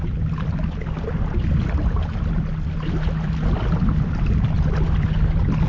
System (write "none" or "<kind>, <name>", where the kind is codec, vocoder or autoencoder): none